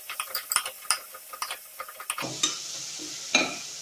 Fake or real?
real